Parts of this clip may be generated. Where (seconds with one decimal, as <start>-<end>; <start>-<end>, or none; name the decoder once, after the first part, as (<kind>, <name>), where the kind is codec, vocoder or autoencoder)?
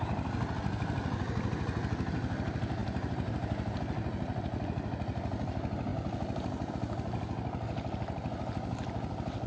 2.8-3.8 (vocoder, BigVGAN v2)